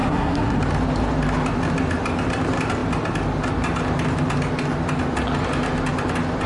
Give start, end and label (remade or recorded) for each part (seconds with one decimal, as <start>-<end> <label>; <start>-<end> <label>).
0.0-0.6 remade; 0.6-6.5 recorded